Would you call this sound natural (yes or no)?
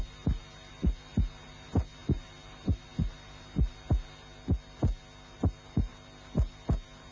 yes